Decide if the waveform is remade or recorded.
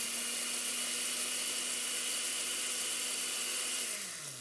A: recorded